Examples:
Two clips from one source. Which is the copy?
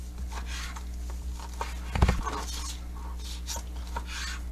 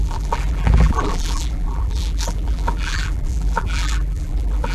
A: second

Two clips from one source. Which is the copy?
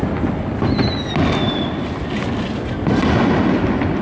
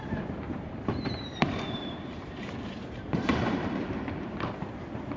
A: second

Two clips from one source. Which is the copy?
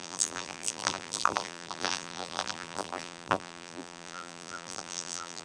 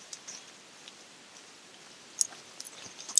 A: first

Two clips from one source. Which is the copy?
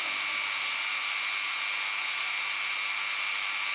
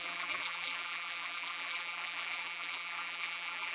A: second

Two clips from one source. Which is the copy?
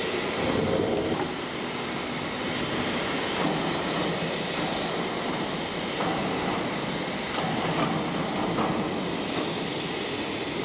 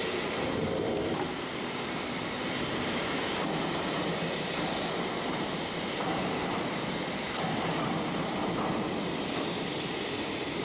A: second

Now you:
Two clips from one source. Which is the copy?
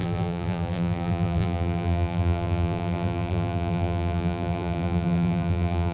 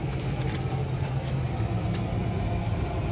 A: first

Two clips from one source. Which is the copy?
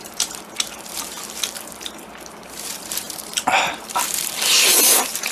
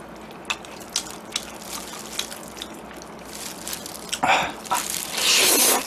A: first